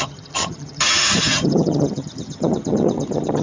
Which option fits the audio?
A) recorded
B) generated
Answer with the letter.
B